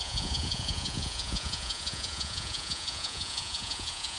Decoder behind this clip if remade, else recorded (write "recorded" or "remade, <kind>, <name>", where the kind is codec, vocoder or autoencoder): remade, vocoder, Vocos